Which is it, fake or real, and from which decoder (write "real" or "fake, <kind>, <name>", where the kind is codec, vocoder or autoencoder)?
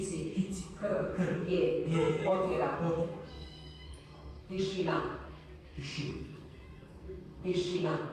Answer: fake, codec, SNAC